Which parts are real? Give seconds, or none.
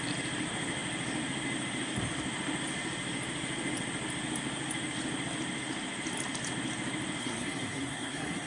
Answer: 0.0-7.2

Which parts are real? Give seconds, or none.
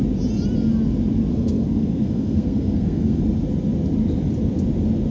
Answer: 0.0-1.3; 3.2-5.1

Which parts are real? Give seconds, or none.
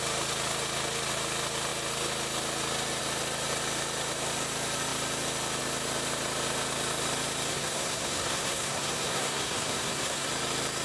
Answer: 0.0-7.5; 10.3-10.8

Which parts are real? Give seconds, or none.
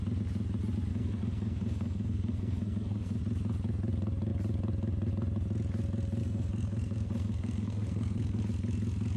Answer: 0.0-0.9; 3.2-6.2; 8.4-9.2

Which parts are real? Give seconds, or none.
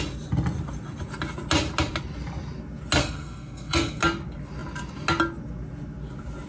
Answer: 0.0-3.0; 4.0-6.5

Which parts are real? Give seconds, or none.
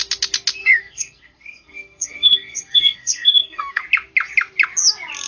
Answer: 0.0-0.6; 3.8-5.3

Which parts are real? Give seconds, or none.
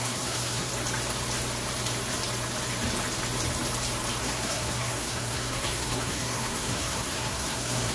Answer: 0.7-4.2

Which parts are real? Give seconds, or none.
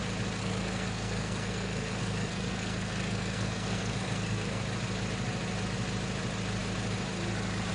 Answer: 0.0-0.4; 4.6-7.7